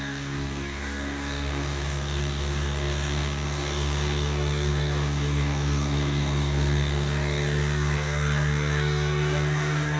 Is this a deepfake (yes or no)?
yes